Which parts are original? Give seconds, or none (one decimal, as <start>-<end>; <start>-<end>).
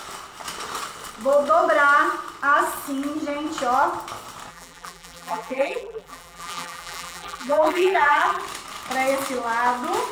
0.0-4.5; 8.4-10.1